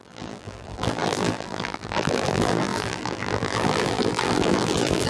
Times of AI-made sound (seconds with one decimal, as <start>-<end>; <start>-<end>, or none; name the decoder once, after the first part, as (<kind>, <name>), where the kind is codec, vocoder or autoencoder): 0.0-5.1 (vocoder, BigVGAN v2)